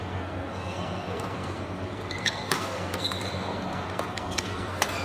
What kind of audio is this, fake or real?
fake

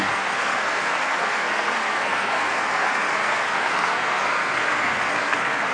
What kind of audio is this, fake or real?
fake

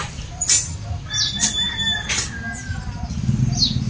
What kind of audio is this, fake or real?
real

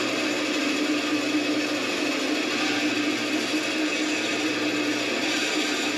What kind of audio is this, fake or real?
real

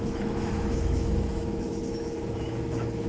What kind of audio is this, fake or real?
fake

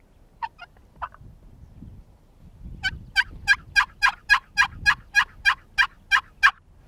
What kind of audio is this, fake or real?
real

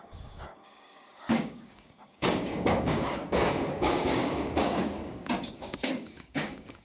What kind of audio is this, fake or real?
fake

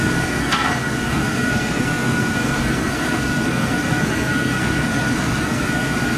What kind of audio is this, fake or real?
fake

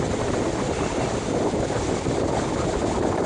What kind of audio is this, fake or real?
real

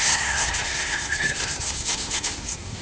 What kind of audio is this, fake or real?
fake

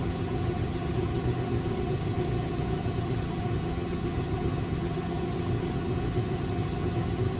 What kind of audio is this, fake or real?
fake